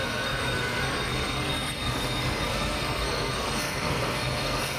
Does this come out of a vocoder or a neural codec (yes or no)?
yes